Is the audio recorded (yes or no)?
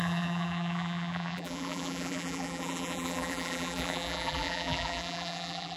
no